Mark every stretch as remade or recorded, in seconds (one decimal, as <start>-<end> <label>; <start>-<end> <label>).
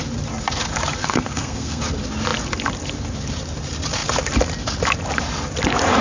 0.0-1.0 recorded; 1.0-1.8 remade; 1.8-6.0 recorded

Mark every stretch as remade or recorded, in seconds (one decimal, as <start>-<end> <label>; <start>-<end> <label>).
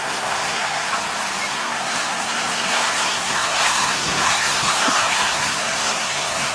0.0-0.9 remade; 0.9-1.5 recorded; 1.5-6.5 remade